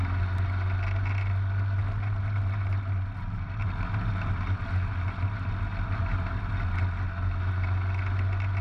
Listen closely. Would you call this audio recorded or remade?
recorded